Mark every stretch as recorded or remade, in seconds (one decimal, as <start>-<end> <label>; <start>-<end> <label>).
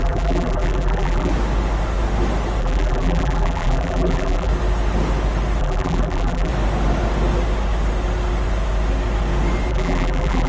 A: 0.0-1.3 remade; 1.3-2.6 recorded; 2.6-4.5 remade; 4.5-5.6 recorded; 5.6-6.5 remade; 6.5-9.7 recorded; 9.7-10.5 remade